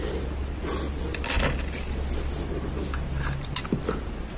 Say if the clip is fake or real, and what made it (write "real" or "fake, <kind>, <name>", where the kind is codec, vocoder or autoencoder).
real